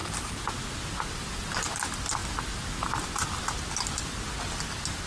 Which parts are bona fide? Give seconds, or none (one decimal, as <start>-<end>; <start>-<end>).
0.0-5.1